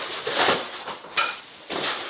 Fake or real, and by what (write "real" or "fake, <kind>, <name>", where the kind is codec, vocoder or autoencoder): fake, vocoder, BigVGAN v2